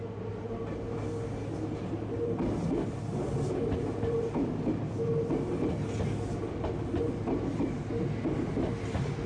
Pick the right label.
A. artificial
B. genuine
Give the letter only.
B